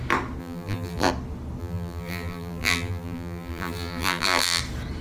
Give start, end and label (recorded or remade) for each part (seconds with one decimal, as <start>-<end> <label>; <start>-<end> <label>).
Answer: 0.0-0.4 recorded; 0.4-1.1 remade; 1.1-1.6 recorded; 1.6-4.6 remade; 4.6-5.0 recorded

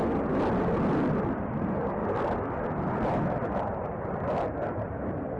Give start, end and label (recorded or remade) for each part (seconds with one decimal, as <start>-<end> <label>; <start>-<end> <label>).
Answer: 0.0-5.4 recorded

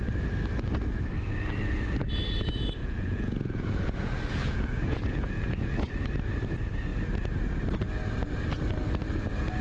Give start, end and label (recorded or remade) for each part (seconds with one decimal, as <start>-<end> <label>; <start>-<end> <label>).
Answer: 0.0-2.8 recorded; 2.8-5.9 remade; 5.9-9.6 recorded

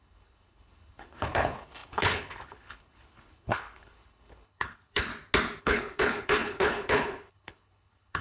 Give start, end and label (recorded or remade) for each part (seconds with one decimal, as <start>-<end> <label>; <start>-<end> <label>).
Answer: 0.0-5.1 remade; 5.1-5.6 recorded; 5.6-8.2 remade

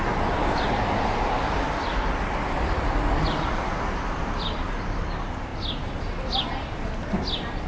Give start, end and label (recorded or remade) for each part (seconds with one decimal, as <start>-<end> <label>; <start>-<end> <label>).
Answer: 0.0-7.7 recorded

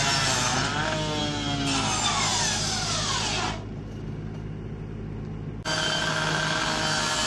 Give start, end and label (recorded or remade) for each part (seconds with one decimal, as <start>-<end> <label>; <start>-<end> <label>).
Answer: 0.0-7.3 recorded

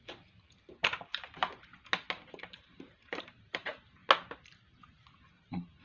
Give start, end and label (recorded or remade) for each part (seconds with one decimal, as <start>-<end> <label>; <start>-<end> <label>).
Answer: 0.0-0.7 recorded; 0.7-1.7 remade; 1.7-2.3 recorded; 2.3-4.0 remade; 4.0-5.3 recorded; 5.3-5.8 remade